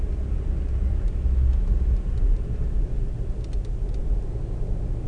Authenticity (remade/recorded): recorded